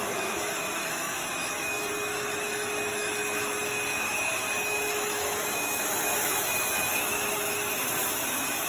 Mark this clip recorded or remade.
remade